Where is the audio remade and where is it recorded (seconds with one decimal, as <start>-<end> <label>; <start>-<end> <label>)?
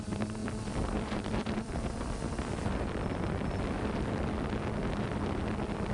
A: 0.0-0.4 recorded; 0.4-3.9 remade; 3.9-5.9 recorded